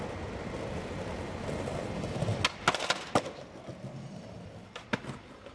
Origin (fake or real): real